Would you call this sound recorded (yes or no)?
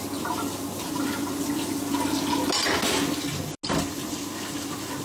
yes